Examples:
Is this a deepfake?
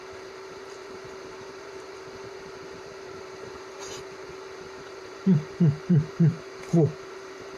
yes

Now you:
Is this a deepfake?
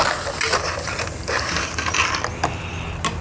no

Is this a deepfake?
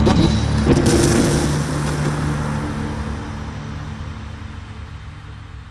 no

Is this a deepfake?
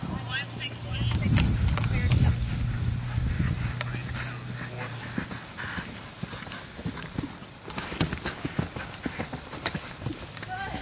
no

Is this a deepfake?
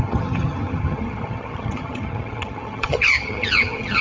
yes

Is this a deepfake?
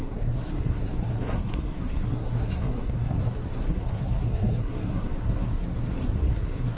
yes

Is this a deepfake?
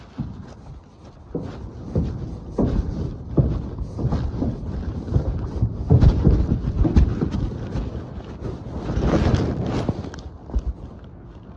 no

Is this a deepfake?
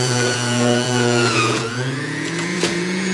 yes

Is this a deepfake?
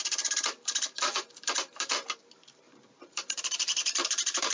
yes